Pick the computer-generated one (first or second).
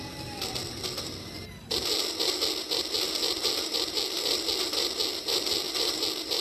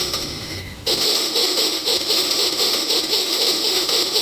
second